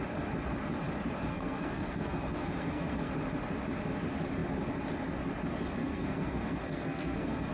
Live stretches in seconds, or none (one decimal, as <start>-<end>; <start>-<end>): 0.0-1.3; 3.1-5.8